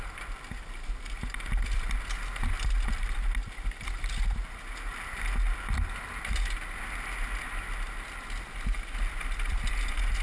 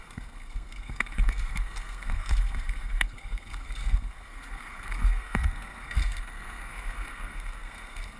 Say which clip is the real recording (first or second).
first